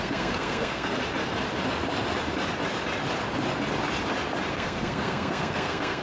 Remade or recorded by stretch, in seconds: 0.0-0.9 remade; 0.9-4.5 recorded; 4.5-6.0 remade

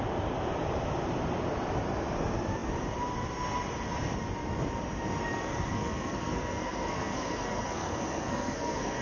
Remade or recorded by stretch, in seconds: 0.0-5.2 recorded; 5.2-9.0 remade

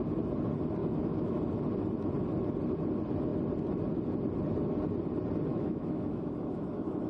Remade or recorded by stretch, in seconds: 0.0-0.8 recorded; 0.8-1.4 remade; 1.4-5.5 recorded; 5.5-7.1 remade